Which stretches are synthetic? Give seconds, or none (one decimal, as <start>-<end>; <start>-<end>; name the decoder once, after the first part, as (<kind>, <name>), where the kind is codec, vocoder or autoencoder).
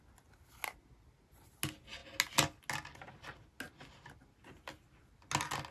none